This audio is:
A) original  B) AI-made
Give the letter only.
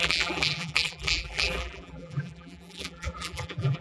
B